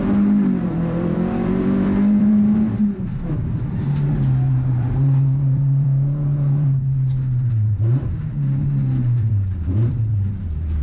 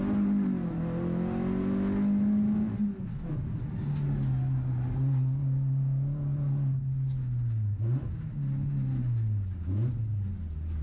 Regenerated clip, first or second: first